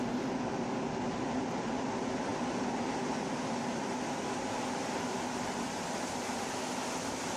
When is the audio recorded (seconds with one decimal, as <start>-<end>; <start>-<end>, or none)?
0.0-7.4